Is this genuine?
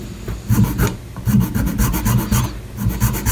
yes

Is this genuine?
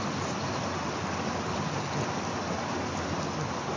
yes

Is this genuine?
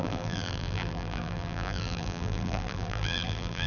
no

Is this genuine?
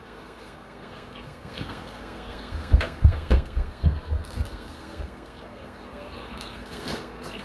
no